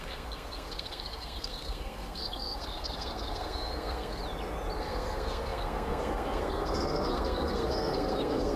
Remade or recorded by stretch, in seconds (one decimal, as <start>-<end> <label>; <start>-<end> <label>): 0.0-4.2 remade; 4.2-4.8 recorded; 4.8-8.6 remade